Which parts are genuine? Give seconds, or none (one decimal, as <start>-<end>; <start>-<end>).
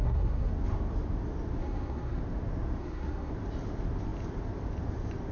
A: 0.5-1.6; 2.2-2.8; 3.3-5.3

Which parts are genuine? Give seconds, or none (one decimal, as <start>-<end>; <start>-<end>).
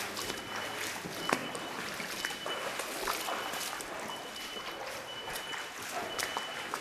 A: 0.0-6.8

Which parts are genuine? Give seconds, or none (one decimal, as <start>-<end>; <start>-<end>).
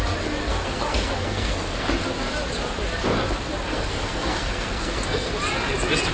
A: 0.0-0.4; 1.9-3.7; 5.3-6.1